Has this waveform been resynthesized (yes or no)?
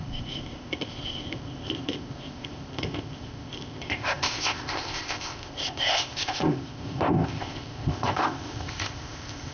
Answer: yes